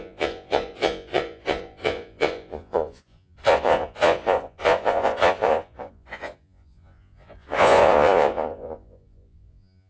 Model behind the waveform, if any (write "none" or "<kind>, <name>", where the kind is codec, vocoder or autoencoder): vocoder, Vocos